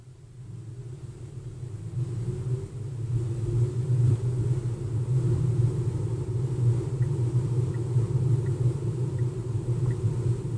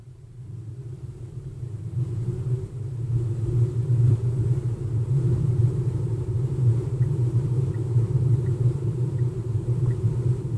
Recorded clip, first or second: first